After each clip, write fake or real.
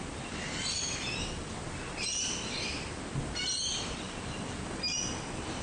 real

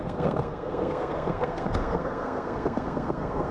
fake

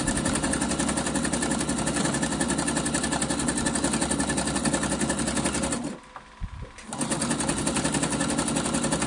real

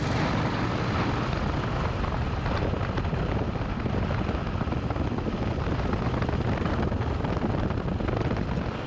real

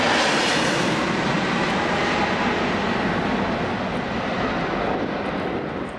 real